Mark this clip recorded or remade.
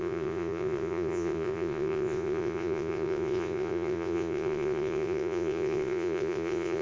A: remade